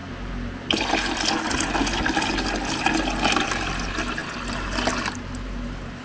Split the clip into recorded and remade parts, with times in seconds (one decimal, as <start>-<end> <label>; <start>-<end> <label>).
0.0-6.0 recorded